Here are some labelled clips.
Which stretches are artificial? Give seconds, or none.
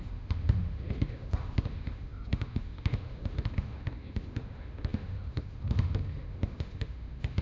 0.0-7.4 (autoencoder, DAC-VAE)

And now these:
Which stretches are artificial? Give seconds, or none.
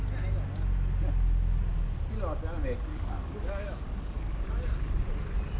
2.9-5.0 (codec, DAC)